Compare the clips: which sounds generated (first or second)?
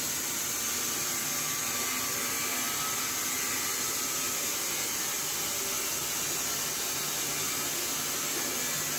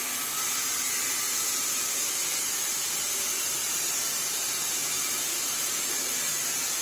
second